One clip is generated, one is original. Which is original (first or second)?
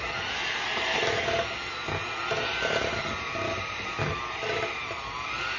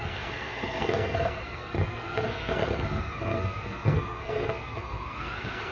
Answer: first